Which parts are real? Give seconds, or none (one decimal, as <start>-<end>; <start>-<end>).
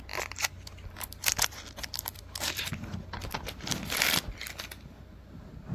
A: 0.0-1.3; 2.6-3.2; 4.2-5.7